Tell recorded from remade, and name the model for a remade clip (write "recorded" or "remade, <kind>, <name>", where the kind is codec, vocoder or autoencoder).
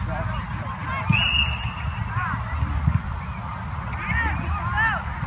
recorded